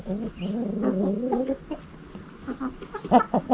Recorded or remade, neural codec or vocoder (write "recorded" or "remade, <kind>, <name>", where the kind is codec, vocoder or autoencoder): recorded